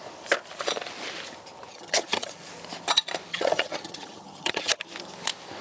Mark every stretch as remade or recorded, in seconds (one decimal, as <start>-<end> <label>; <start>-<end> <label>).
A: 0.0-1.7 recorded; 1.7-2.5 remade; 2.5-3.3 recorded; 3.3-4.8 remade; 4.8-5.6 recorded